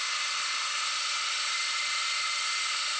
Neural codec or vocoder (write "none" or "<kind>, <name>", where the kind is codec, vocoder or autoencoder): none